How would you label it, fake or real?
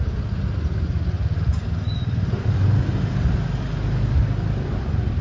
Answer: real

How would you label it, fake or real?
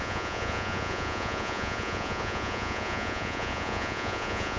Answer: fake